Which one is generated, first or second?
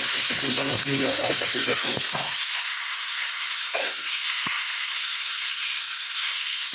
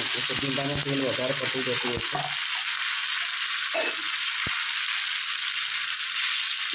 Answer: first